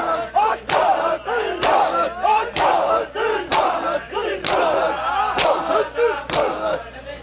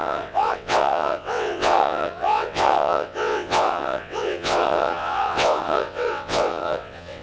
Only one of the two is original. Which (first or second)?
first